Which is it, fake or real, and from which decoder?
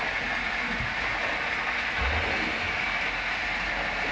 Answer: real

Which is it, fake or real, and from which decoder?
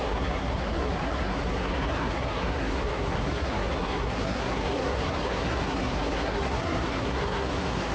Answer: fake, codec, SNAC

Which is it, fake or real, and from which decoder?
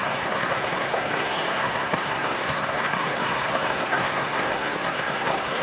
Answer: fake, codec, SNAC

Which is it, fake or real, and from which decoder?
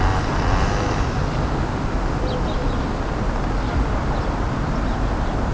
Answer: real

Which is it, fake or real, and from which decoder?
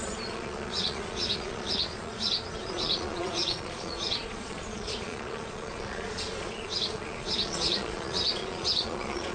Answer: fake, vocoder, Vocos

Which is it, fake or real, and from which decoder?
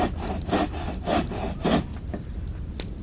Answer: real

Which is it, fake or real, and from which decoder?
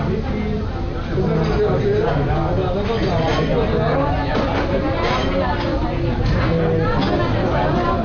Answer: real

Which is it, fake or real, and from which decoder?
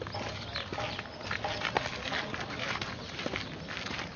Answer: real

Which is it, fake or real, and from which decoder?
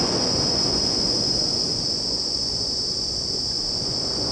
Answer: fake, vocoder, Vocos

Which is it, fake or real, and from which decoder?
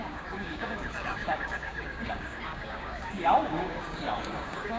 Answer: fake, codec, DAC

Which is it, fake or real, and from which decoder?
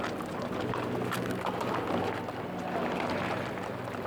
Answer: real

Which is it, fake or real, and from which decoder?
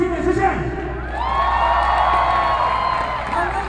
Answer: real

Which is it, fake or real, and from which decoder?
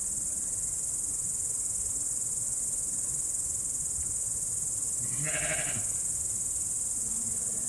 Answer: real